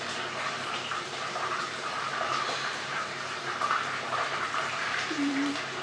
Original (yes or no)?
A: no